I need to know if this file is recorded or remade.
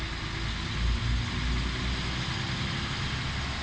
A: recorded